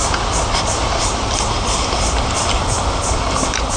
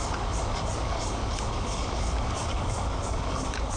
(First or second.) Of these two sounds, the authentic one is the first